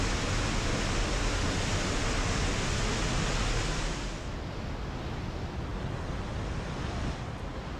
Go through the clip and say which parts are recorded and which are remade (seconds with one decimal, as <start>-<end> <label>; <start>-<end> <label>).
0.0-7.8 recorded